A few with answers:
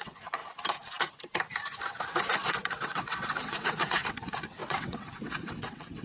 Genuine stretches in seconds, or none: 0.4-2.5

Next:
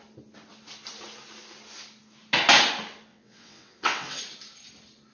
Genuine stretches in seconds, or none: 0.0-3.1; 4.2-5.1

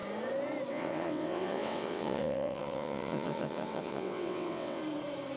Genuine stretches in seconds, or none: 0.0-0.7; 4.8-5.4

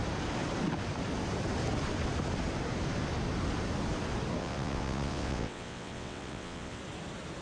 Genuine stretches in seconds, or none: 0.0-4.4; 6.8-7.4

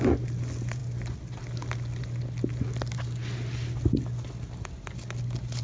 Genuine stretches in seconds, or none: 0.0-5.6